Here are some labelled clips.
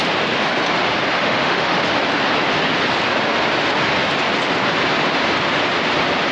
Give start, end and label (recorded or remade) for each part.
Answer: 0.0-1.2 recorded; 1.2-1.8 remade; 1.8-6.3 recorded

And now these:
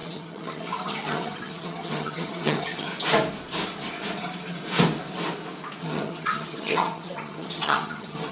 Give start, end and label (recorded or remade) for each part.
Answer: 0.0-2.9 remade; 2.9-5.8 recorded; 5.8-8.3 remade

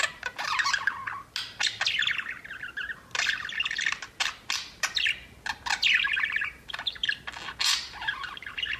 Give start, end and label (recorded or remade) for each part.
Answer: 0.0-1.0 remade; 1.0-6.0 recorded; 6.0-7.0 remade; 7.0-7.6 recorded; 7.6-8.8 remade